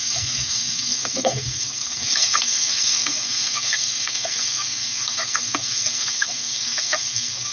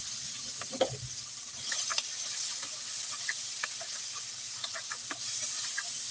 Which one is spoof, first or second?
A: first